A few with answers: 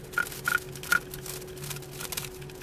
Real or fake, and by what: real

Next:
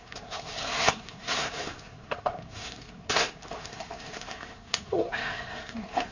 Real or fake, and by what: fake, codec, SNAC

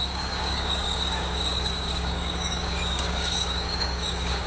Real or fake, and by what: fake, codec, DAC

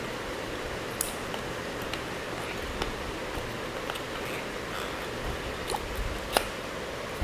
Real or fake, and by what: real